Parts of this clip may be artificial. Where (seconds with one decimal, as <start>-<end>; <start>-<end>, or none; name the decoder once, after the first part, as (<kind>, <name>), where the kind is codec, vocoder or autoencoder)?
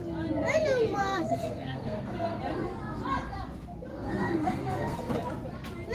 1.0-2.4 (codec, SNAC); 3.9-5.1